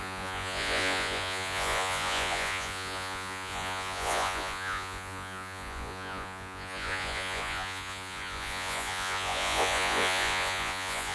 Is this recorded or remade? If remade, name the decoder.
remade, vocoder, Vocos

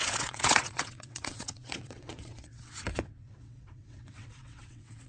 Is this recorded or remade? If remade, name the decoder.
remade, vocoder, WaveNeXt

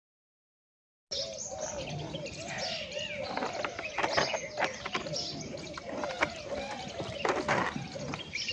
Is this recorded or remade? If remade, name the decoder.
recorded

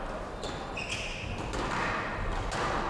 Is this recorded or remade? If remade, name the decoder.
recorded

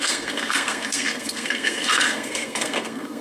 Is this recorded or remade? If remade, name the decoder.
remade, codec, SNAC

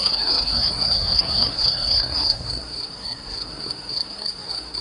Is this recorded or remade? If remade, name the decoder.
remade, codec, SNAC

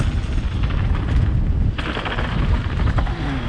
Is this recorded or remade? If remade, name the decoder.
recorded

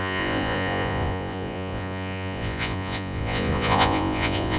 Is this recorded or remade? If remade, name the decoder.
remade, vocoder, Vocos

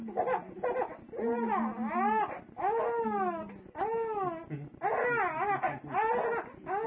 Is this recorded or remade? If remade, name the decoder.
recorded